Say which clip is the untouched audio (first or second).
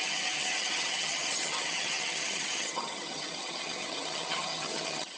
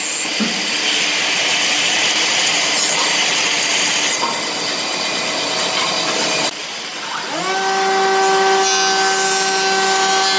second